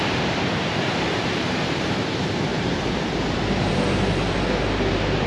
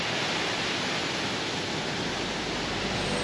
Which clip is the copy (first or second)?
first